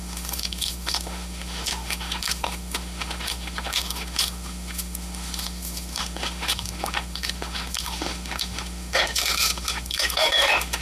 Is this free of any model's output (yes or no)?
no